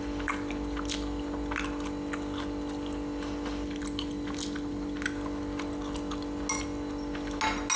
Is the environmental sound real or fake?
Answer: real